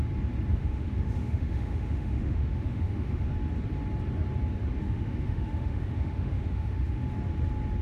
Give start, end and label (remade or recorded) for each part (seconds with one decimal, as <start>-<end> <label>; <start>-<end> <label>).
0.0-0.5 recorded; 0.5-3.3 remade; 3.3-4.8 recorded; 4.8-7.0 remade; 7.0-7.8 recorded